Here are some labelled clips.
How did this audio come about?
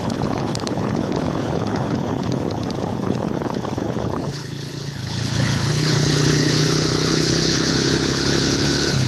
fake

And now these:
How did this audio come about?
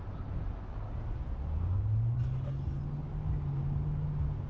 real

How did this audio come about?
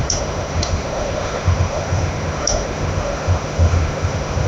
fake